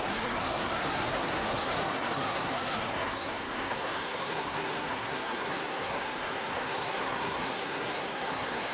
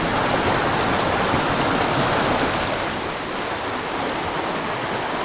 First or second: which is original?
second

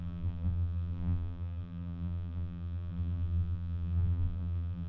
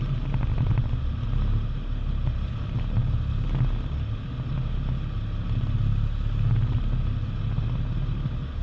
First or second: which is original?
second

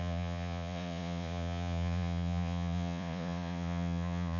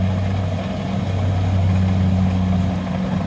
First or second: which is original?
second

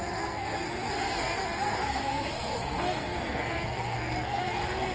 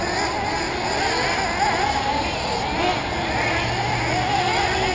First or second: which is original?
second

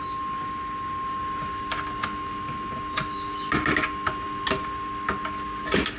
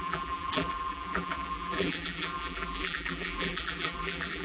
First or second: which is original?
first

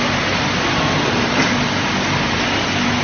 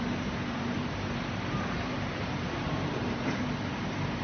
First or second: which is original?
first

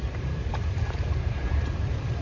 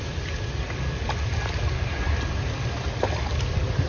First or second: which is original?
second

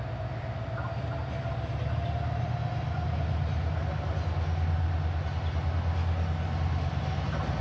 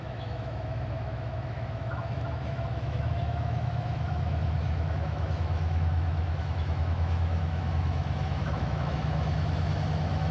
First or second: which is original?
first